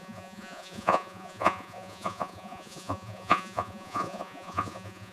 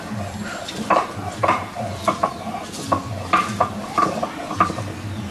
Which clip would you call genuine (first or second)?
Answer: second